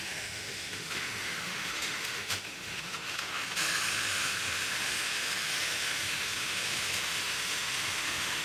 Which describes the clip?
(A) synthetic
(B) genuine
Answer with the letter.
A